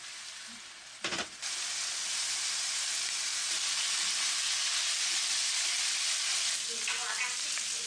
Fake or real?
real